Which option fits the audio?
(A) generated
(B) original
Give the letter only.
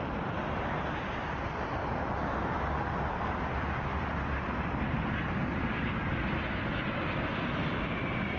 B